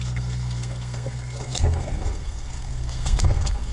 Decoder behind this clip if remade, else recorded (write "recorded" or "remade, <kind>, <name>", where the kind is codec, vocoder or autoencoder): remade, codec, SNAC